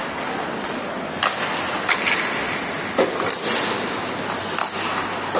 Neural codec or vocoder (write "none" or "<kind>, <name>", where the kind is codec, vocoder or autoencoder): none